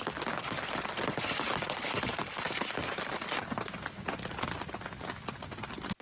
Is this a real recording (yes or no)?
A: yes